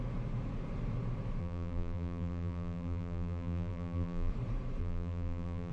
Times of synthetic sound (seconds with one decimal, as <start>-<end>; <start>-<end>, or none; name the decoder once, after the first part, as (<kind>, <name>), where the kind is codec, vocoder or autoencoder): 1.4-4.3 (vocoder, BigVGAN v2); 4.8-5.7